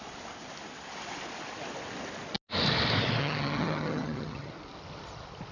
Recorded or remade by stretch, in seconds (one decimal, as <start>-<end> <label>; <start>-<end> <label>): 0.0-3.2 recorded; 3.2-4.5 remade; 4.5-5.5 recorded